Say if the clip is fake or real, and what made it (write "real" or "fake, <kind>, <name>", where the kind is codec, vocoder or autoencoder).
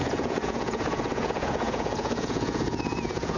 fake, vocoder, Vocos